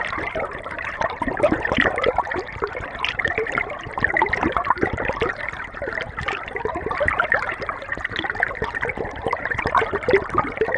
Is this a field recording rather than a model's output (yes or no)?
no